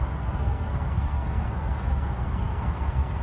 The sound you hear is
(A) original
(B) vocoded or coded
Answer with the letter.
B